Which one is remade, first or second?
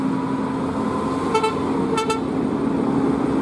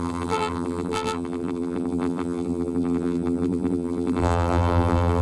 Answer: second